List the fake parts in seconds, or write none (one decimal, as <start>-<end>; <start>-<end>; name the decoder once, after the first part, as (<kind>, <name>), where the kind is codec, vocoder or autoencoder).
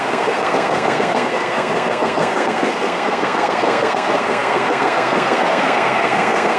0.0-6.6 (codec, SNAC)